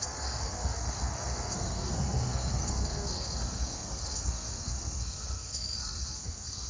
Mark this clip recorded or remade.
remade